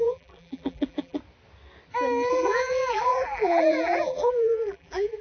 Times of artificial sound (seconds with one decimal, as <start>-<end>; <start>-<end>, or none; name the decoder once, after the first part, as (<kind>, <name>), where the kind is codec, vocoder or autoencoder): 0.0-1.2 (vocoder, BigVGAN v2); 2.3-5.2